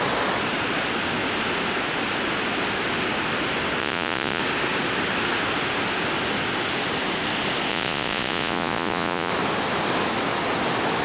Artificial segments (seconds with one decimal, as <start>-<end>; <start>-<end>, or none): 3.8-4.4; 7.7-9.3